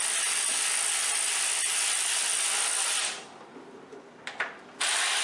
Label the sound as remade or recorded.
recorded